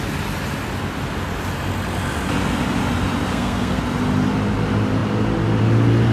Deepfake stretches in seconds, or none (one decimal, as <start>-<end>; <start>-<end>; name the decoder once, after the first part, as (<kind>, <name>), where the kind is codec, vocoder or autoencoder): 3.3-3.8 (codec, SNAC)